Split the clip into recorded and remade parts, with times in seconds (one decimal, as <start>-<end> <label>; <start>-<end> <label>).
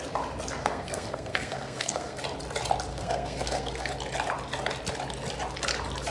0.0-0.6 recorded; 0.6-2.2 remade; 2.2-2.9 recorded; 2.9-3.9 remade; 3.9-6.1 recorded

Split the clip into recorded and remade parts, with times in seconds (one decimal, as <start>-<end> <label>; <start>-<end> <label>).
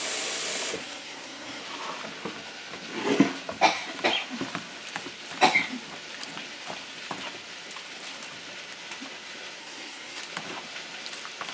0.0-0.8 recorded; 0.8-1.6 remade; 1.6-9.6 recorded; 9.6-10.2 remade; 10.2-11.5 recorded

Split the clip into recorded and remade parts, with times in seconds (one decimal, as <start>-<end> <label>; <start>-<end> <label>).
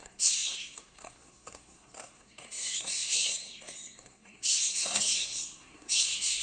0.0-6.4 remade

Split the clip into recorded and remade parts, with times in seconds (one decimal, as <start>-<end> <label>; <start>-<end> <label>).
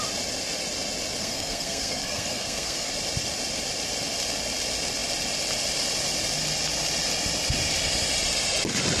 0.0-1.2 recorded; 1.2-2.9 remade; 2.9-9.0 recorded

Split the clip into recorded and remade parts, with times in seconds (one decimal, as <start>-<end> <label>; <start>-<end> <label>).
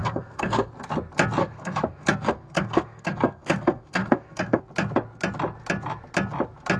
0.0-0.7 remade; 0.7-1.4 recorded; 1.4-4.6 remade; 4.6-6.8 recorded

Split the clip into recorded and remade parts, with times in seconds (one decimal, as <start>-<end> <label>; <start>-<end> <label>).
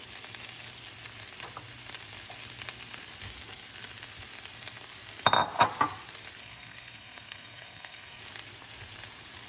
0.0-6.4 recorded; 6.4-8.2 remade; 8.2-9.5 recorded